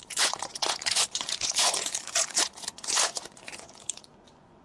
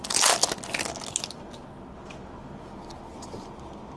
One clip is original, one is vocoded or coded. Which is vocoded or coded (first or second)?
first